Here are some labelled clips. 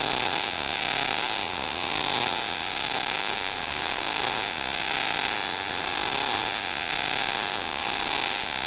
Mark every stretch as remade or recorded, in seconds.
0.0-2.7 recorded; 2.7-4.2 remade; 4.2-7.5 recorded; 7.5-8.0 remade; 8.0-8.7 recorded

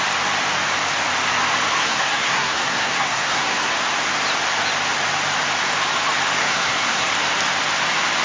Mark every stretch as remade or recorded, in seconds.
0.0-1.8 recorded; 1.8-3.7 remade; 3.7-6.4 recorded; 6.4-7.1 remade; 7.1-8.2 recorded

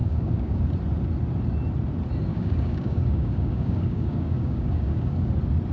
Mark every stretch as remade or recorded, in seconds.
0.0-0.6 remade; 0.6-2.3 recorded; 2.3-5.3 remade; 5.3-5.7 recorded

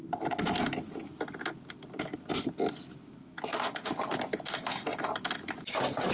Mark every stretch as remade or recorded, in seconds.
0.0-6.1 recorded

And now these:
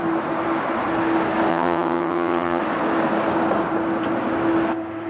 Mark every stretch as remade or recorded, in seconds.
0.0-1.5 recorded; 1.5-2.6 remade; 2.6-5.1 recorded

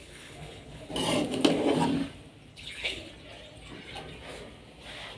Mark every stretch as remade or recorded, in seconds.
0.0-0.9 remade; 0.9-2.5 recorded; 2.5-3.1 remade; 3.1-5.2 recorded

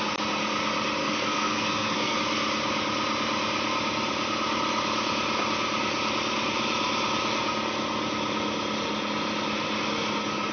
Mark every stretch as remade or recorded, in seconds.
0.0-1.0 recorded; 1.0-2.2 remade; 2.2-10.5 recorded

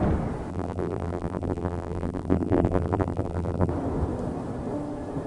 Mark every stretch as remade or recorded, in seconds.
0.0-0.5 recorded; 0.5-3.7 remade; 3.7-5.3 recorded